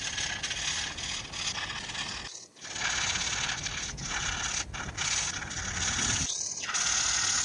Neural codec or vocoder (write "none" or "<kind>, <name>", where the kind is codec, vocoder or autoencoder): none